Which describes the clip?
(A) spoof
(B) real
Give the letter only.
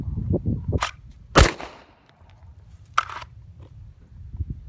B